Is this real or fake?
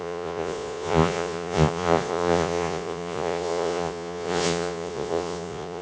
fake